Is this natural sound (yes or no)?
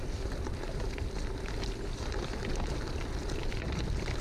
yes